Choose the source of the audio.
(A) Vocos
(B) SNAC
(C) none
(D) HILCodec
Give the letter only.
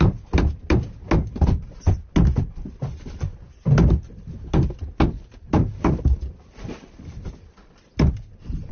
C